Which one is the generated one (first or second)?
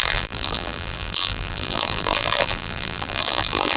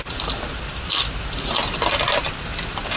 first